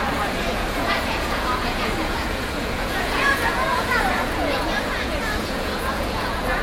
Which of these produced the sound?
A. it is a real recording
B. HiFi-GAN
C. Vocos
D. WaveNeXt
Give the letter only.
C